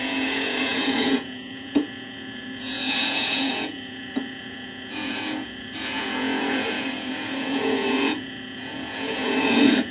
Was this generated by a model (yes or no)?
yes